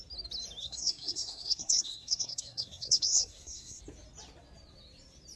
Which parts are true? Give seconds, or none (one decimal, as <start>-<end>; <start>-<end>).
0.0-0.6; 3.8-5.4